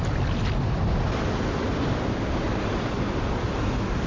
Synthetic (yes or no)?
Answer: no